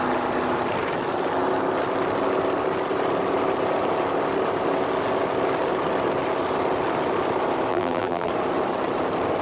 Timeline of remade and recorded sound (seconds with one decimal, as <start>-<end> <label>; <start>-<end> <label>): 0.0-7.7 recorded; 7.7-8.3 remade; 8.3-9.4 recorded